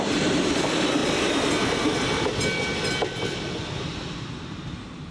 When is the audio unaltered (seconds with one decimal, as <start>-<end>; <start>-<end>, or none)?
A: 0.0-5.1